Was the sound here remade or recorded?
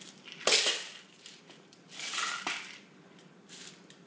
recorded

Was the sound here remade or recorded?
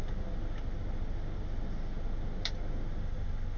recorded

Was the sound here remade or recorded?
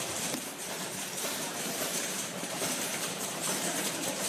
remade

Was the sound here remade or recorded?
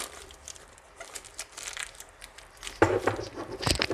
remade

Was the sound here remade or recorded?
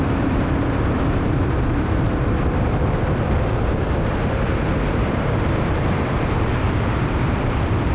remade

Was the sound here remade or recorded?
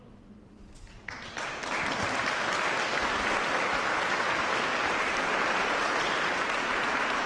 recorded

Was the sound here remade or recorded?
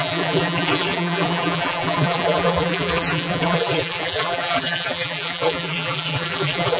remade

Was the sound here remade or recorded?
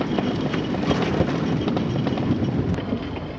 recorded